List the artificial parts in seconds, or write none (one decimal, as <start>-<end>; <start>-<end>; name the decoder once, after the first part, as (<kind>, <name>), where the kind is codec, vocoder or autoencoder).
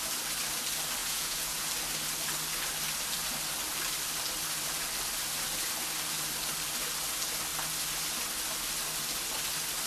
1.0-1.7 (vocoder, Vocos)